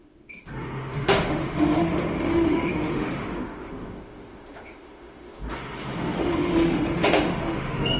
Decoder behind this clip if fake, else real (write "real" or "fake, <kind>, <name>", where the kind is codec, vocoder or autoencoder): fake, autoencoder, DAC-VAE